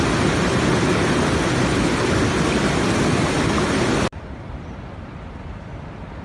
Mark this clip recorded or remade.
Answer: recorded